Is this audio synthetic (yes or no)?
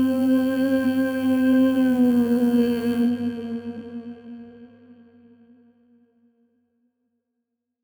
yes